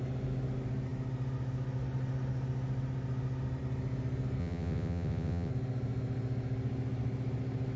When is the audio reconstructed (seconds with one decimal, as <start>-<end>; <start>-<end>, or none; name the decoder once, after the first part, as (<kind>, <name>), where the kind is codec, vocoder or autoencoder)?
4.4-5.5 (vocoder, WaveNeXt)